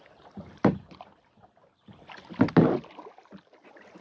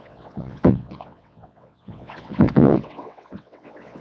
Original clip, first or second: first